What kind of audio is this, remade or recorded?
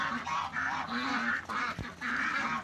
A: recorded